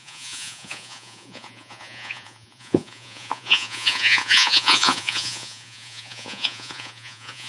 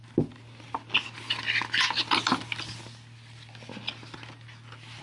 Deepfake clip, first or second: first